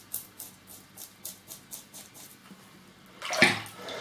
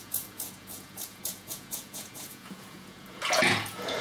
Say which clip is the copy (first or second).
second